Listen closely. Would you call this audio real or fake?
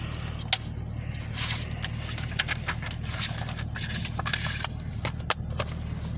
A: real